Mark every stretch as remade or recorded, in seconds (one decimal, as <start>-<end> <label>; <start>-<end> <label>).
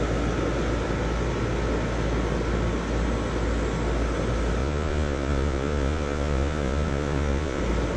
0.0-4.6 recorded; 4.6-7.6 remade; 7.6-8.0 recorded